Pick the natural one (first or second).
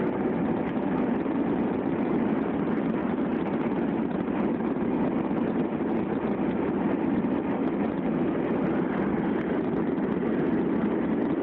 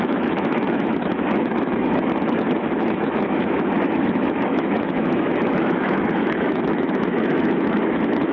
first